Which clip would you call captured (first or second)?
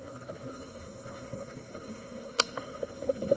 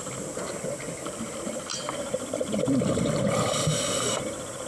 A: second